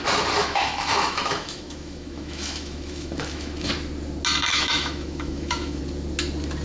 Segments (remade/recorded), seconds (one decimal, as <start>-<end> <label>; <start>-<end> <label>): 0.0-0.4 recorded; 0.4-3.7 remade; 3.7-4.5 recorded; 4.5-5.8 remade; 5.8-6.6 recorded